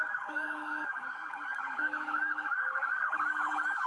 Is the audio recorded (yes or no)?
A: no